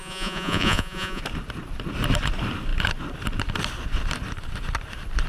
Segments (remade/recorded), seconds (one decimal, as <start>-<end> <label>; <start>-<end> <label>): 0.0-1.2 remade; 1.2-5.3 recorded